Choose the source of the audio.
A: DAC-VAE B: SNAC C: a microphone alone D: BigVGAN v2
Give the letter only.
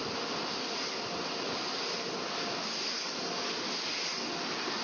C